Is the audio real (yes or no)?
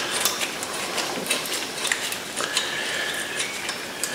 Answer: yes